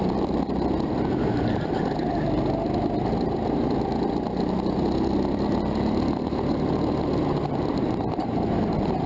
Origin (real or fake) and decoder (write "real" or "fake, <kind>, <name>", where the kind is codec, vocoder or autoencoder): real